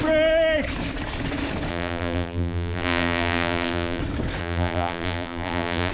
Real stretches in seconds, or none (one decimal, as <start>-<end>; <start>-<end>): 0.0-1.7; 4.0-4.4